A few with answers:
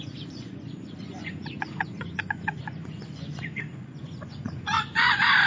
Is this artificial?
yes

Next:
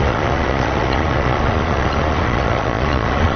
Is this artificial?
yes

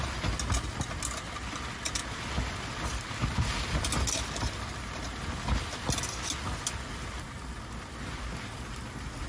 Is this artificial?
no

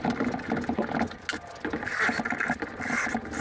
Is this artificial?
no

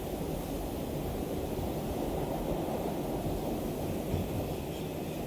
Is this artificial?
no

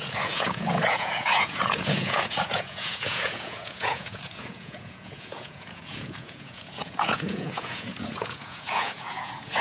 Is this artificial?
yes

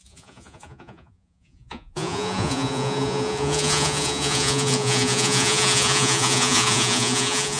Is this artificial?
yes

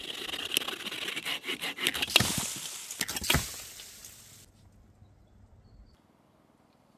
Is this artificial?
no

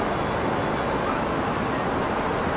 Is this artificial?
no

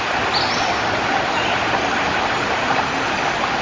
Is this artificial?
no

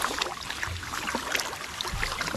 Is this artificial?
no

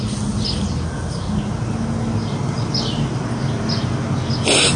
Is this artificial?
no